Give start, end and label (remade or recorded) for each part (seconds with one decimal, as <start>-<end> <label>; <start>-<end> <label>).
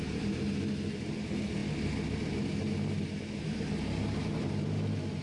0.0-5.2 recorded